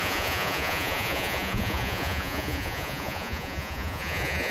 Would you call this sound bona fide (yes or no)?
no